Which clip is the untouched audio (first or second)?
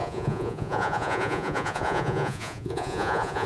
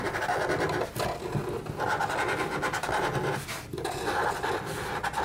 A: second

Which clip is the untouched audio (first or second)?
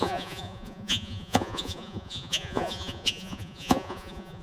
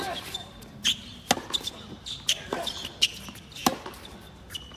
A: second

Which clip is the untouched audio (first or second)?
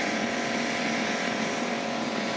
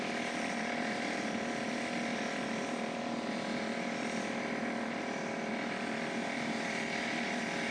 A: second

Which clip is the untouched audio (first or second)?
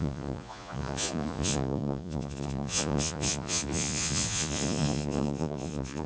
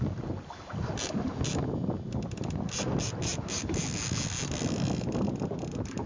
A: second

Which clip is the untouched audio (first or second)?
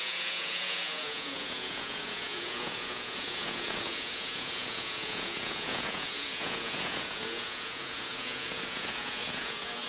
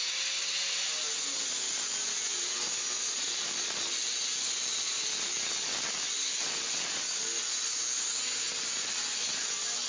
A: second